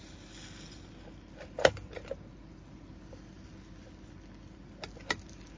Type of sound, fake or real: real